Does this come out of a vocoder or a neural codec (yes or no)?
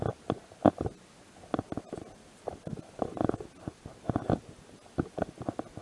no